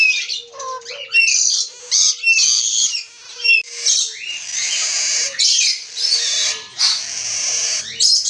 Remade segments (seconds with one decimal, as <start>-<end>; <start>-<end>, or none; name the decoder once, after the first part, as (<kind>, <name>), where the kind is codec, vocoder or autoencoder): none